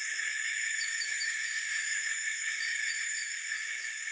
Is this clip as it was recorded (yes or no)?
no